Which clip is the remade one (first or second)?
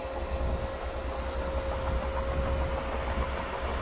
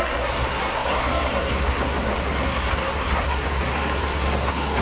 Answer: second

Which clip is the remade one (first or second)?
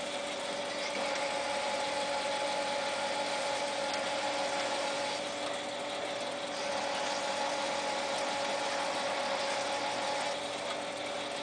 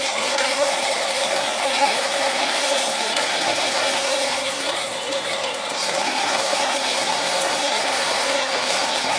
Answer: second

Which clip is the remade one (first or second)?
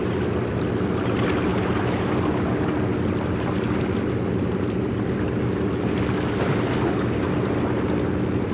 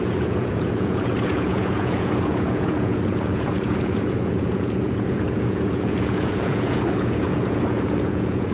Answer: second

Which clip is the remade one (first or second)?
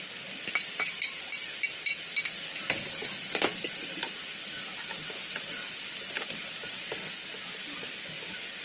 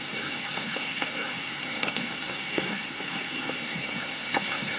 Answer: second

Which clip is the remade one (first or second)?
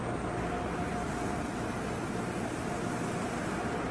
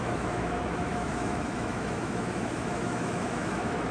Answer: second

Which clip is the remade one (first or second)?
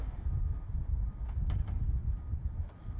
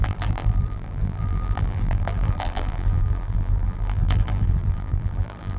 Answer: second